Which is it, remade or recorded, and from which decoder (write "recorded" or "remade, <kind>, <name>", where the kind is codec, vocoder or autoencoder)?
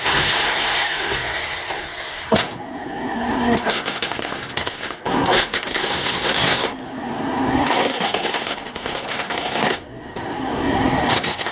remade, codec, SNAC